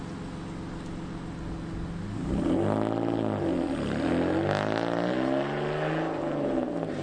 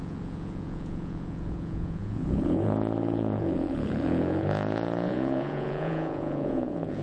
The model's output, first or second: second